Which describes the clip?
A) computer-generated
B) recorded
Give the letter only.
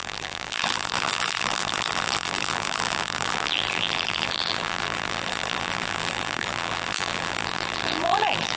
A